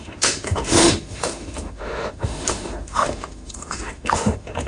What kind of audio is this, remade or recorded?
remade